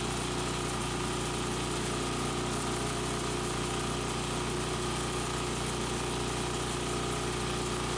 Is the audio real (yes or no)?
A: yes